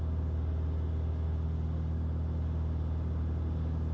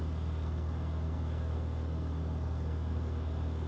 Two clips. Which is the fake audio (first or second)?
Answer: second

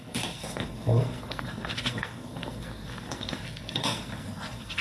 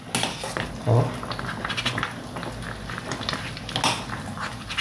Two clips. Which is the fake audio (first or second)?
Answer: first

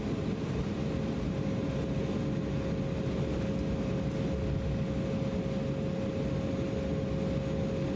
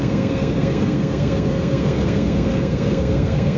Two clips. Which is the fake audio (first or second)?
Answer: second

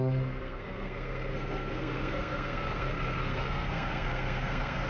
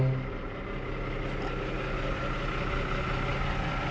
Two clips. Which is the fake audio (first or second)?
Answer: first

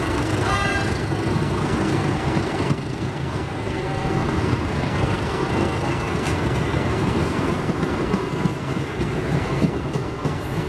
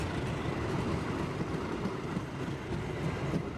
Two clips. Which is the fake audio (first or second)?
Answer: first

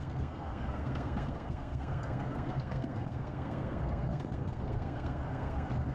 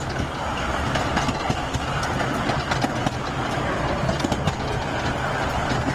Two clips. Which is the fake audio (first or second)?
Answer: first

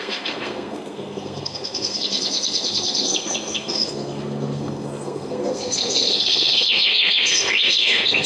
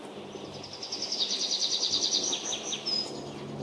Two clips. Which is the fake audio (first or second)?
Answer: first